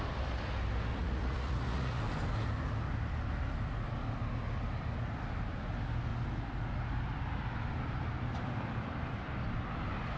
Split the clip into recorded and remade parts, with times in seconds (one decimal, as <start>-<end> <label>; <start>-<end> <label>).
0.0-0.9 recorded; 0.9-2.0 remade; 2.0-10.2 recorded